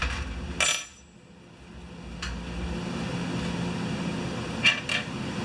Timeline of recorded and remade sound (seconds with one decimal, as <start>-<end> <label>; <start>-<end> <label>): 0.0-5.4 recorded